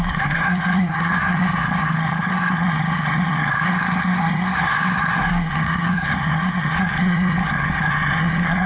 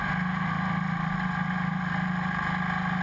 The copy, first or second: first